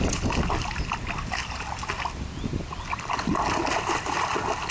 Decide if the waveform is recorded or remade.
recorded